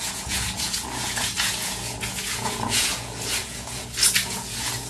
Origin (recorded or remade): remade